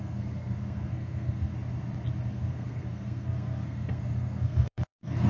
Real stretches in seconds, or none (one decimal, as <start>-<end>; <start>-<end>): 1.5-2.3